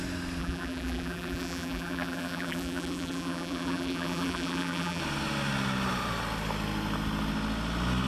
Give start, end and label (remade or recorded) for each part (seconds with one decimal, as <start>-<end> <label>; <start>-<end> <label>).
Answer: 0.0-0.4 recorded; 0.4-5.0 remade; 5.0-8.1 recorded